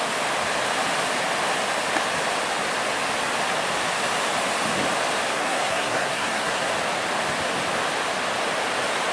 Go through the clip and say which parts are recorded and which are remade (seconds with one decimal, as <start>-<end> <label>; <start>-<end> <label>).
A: 0.0-5.3 recorded; 5.3-6.7 remade; 6.7-9.1 recorded

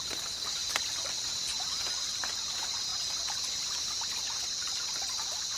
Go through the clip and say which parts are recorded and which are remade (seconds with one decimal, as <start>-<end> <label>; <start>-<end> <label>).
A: 0.0-0.6 recorded; 0.6-1.7 remade; 1.7-5.6 recorded

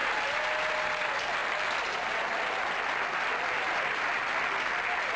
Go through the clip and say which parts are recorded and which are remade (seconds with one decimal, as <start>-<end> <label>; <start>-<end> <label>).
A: 0.0-5.2 recorded

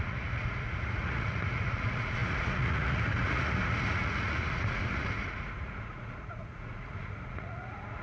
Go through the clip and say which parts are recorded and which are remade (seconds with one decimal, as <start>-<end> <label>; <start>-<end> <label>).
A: 0.0-8.0 remade

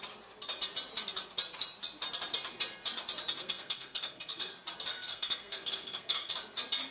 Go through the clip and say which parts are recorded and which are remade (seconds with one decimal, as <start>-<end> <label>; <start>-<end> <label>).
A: 0.0-3.4 recorded; 3.4-4.5 remade; 4.5-4.9 recorded; 4.9-6.3 remade; 6.3-6.9 recorded